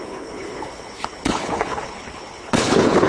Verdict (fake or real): fake